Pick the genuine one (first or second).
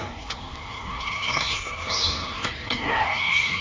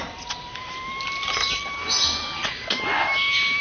second